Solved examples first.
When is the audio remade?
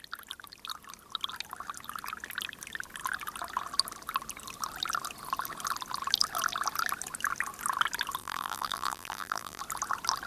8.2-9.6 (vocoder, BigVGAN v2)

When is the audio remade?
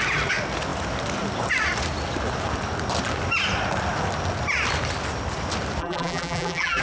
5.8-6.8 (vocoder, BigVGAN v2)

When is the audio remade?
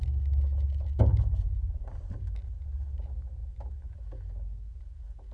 1.1-2.2 (vocoder, BigVGAN v2)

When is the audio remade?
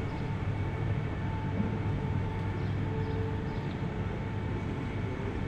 0.0-2.3 (vocoder, BigVGAN v2); 5.0-5.5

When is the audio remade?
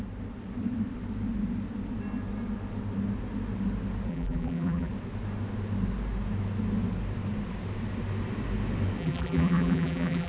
4.1-4.9 (vocoder, BigVGAN v2); 9.0-10.3